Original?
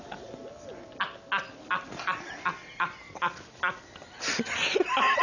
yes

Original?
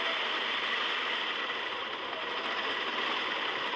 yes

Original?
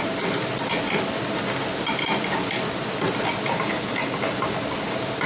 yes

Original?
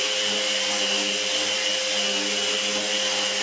yes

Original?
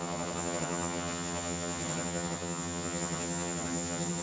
no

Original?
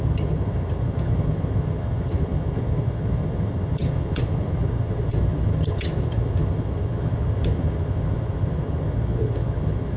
no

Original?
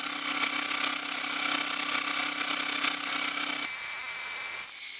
yes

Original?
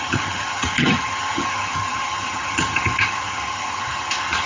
no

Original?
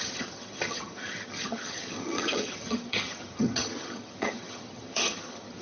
no